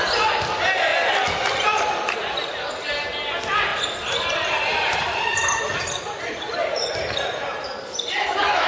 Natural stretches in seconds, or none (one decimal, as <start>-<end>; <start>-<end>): 0.0-3.7